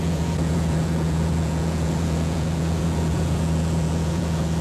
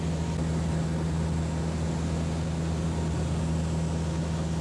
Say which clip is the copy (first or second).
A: first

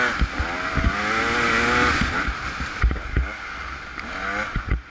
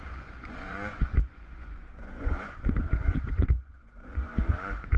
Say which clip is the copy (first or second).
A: second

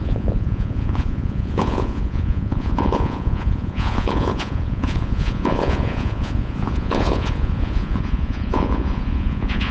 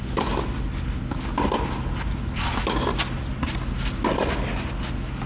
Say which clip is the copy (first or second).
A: first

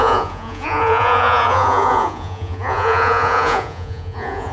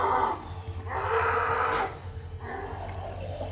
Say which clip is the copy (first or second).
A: first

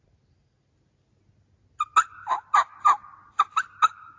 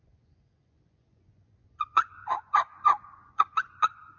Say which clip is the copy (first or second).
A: second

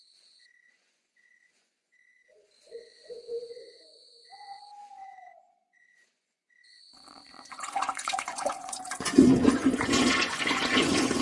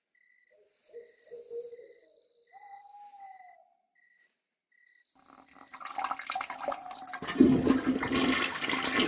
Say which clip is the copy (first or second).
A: first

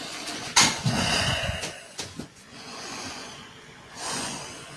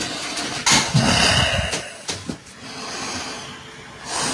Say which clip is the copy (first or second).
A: first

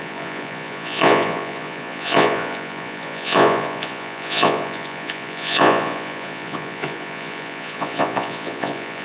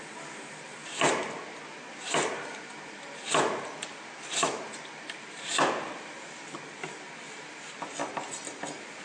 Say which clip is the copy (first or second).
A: first